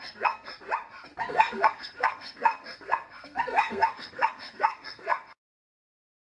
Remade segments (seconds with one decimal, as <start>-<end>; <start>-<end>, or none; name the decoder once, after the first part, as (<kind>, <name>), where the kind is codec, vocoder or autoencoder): 0.0-0.5 (codec, SNAC); 1.2-6.2